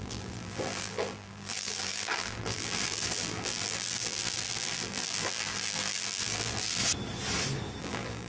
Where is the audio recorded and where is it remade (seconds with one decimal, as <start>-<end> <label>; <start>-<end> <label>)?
0.0-6.8 remade; 6.8-7.8 recorded; 7.8-8.3 remade